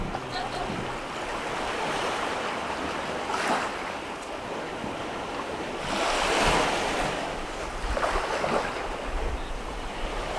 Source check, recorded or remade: recorded